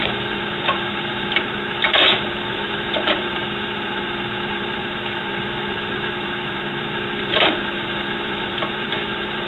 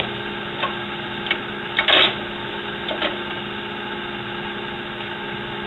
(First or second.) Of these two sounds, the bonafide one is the second